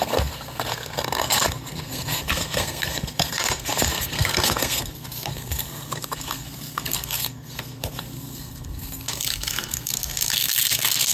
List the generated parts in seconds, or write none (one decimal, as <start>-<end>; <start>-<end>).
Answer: 0.0-11.1